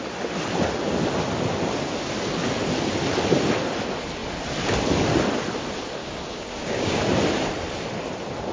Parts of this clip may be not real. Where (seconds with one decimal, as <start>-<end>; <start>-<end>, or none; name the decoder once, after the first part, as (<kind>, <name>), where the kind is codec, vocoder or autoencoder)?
6.0-7.0 (codec, DAC)